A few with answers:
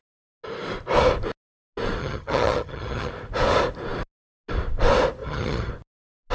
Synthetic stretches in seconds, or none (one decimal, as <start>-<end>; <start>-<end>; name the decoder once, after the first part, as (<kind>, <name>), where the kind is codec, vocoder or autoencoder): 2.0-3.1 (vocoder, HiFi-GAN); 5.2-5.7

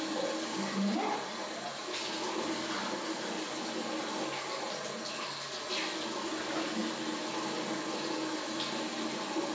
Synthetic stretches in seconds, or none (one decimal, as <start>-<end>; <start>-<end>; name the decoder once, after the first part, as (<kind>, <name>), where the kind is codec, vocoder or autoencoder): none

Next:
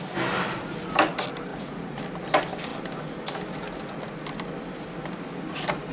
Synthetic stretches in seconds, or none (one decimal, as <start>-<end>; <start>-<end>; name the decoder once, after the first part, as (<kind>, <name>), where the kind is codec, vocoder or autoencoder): 1.5-2.0 (vocoder, Vocos)

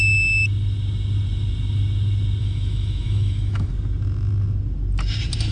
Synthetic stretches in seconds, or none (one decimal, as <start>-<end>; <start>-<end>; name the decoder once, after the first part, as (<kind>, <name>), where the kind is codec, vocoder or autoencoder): 2.4-3.7 (autoencoder, DAC-VAE)

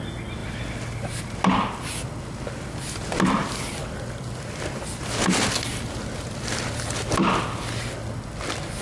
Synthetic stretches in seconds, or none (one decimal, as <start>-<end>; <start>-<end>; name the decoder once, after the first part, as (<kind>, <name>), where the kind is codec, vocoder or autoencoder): 0.4-1.2 (vocoder, BigVGAN v2); 3.4-7.6

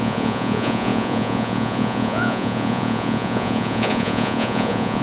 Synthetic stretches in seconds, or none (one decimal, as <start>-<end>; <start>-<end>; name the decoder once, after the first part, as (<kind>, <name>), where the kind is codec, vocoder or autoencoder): 0.0-5.0 (vocoder, Vocos)